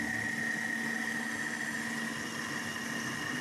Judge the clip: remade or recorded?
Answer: recorded